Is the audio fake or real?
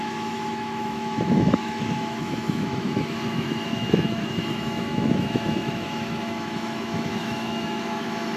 fake